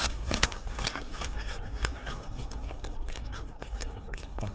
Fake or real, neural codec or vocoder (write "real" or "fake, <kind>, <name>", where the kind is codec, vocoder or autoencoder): fake, codec, SNAC